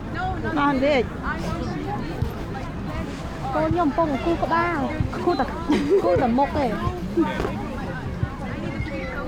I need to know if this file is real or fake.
real